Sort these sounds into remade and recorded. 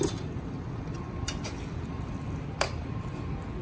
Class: recorded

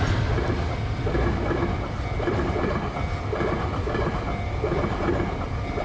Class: recorded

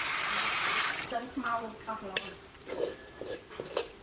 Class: remade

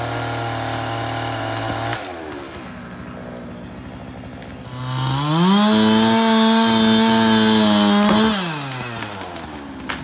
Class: recorded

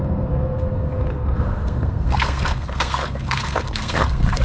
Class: remade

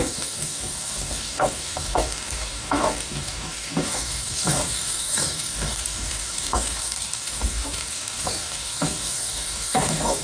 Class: remade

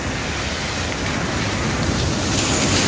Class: recorded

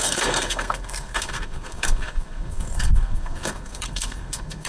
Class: remade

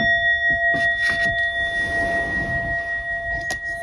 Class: recorded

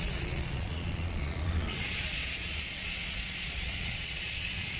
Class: remade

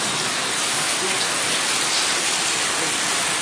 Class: recorded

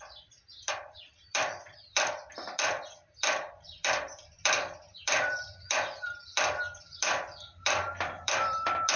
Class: remade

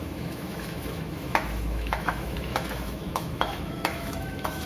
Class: remade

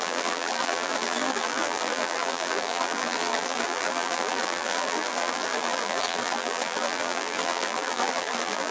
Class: remade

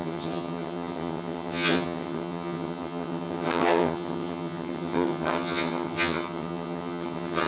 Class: remade